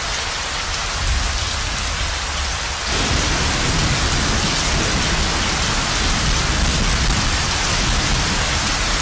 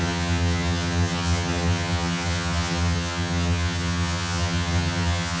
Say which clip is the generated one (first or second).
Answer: second